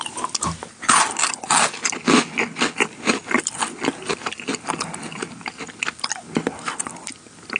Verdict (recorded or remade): recorded